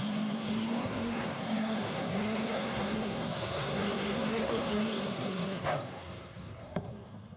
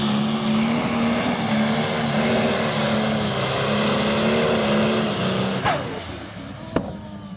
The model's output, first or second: first